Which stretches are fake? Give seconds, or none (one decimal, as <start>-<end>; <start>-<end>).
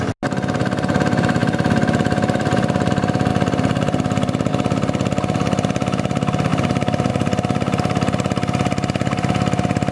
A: 1.4-2.9; 3.3-4.5